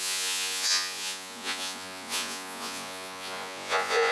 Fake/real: fake